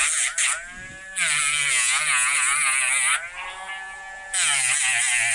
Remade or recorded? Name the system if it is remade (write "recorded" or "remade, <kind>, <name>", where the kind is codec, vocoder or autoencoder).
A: recorded